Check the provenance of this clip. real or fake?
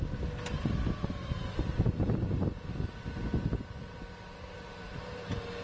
real